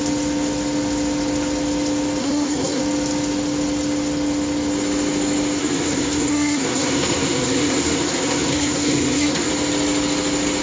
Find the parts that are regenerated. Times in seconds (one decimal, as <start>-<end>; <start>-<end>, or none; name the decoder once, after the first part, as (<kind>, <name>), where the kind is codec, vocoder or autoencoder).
2.2-2.8 (codec, SNAC); 5.6-9.5

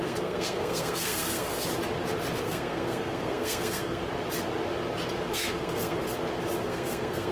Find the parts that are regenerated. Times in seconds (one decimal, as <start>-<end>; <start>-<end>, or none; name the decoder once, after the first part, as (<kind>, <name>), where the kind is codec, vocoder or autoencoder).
0.0-1.7 (codec, SNAC); 2.4-4.0; 5.3-6.0; 6.6-7.3

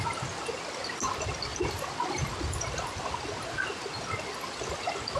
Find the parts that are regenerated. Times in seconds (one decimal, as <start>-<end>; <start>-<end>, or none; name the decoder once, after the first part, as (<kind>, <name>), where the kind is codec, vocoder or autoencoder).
none

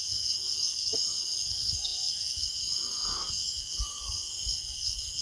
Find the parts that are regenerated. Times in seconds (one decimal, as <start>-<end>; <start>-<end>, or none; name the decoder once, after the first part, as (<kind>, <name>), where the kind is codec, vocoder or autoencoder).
0.0-5.2 (codec, SNAC)